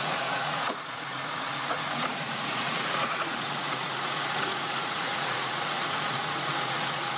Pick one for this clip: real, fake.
fake